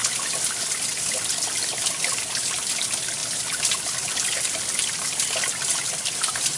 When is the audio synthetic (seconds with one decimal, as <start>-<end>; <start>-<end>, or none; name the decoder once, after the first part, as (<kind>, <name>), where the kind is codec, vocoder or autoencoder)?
none